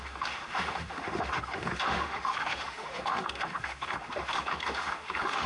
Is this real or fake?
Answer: fake